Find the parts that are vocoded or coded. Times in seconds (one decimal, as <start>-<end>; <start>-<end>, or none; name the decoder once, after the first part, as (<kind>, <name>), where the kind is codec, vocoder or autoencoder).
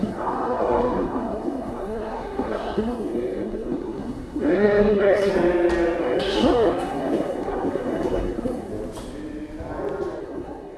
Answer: 0.0-5.3 (codec, SNAC); 6.0-8.7; 10.2-10.8